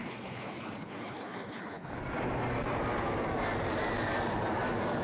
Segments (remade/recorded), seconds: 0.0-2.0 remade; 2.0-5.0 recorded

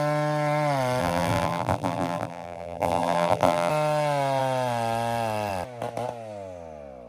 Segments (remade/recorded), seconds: 0.0-1.0 recorded; 1.0-3.7 remade; 3.7-7.1 recorded

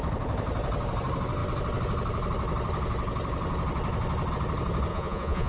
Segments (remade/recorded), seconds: 0.0-4.9 recorded; 4.9-5.5 remade